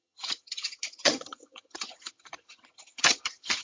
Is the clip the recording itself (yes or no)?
no